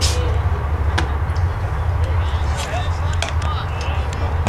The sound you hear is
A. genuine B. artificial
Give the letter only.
A